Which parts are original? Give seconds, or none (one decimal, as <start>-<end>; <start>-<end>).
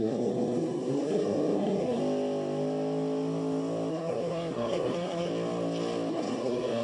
2.0-3.9; 5.3-6.1